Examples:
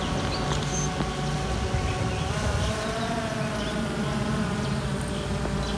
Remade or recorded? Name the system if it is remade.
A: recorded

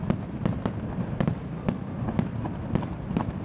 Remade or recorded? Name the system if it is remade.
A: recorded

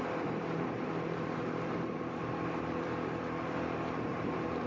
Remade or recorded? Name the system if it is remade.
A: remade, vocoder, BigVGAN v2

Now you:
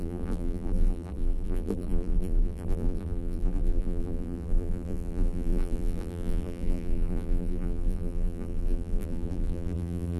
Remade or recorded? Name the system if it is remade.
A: remade, vocoder, BigVGAN v2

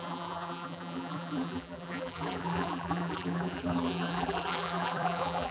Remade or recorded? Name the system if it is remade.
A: remade, vocoder, BigVGAN v2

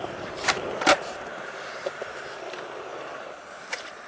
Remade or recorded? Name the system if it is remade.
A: remade, vocoder, BigVGAN v2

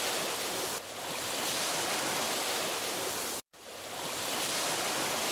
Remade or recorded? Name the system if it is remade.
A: recorded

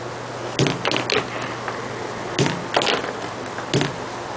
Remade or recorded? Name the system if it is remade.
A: recorded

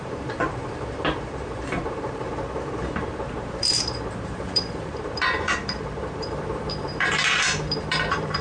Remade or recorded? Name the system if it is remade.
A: remade, vocoder, BigVGAN v2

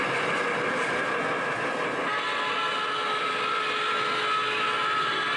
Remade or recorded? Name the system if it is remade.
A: recorded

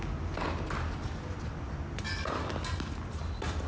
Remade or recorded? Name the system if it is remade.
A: recorded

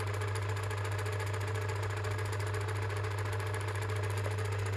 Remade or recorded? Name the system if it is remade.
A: recorded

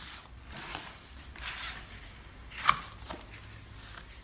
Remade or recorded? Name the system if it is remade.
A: recorded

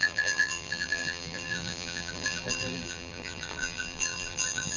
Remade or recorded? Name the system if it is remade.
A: remade, vocoder, BigVGAN v2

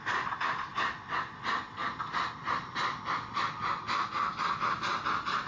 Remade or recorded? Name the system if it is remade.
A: recorded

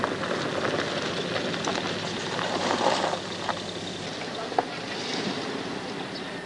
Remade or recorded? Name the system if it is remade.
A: recorded